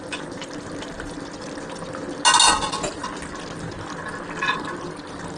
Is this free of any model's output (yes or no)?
yes